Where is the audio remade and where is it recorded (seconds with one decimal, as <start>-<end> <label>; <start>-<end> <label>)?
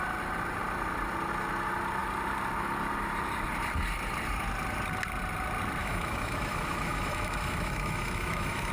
0.0-5.8 recorded; 5.8-8.7 remade